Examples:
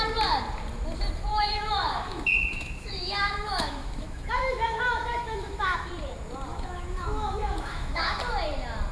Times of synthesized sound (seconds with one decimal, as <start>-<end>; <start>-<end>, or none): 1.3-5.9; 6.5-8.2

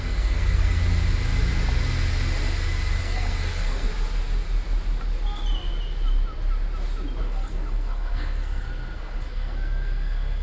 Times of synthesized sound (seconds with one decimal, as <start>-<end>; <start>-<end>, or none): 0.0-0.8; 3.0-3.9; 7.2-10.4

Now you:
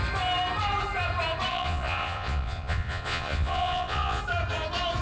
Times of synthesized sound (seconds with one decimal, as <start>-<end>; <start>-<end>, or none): 1.5-4.2